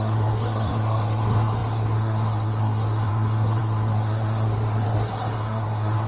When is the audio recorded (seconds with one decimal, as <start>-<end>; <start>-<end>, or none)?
none